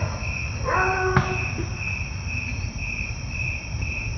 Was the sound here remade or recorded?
recorded